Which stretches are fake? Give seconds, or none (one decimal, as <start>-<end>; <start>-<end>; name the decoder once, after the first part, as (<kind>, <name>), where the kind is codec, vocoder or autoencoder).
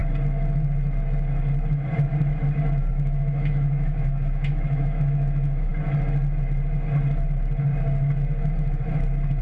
2.9-5.7 (autoencoder, DAC-VAE)